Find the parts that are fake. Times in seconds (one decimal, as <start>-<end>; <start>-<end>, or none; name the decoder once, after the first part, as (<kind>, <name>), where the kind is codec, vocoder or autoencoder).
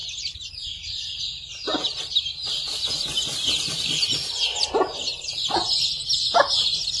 0.0-1.2 (vocoder, BigVGAN v2)